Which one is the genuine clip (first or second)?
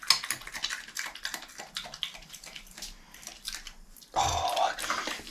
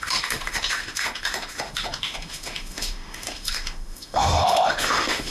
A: first